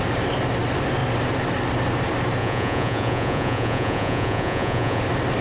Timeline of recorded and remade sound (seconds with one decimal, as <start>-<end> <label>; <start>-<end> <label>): 0.0-2.4 recorded; 2.4-5.0 remade; 5.0-5.4 recorded